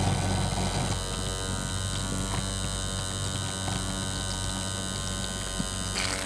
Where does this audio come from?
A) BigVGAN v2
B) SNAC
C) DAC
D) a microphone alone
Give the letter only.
D